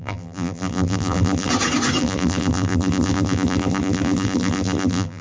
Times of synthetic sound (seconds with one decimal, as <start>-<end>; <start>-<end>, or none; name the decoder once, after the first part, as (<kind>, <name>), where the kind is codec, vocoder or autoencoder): 0.0-1.5 (vocoder, BigVGAN v2); 2.0-5.2